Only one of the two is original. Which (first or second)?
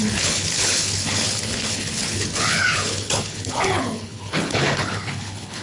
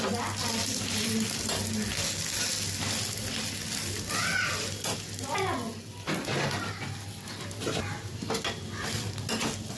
second